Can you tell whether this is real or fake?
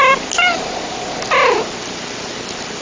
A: real